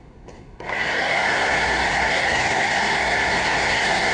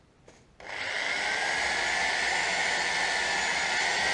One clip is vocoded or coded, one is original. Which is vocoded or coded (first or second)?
first